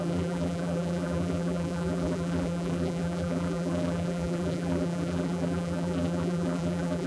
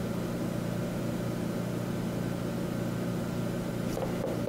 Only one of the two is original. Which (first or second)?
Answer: second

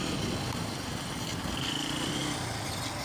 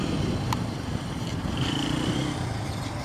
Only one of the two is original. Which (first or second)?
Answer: first